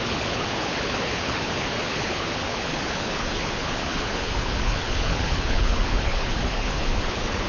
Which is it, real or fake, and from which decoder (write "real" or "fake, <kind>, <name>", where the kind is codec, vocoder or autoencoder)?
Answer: fake, codec, HILCodec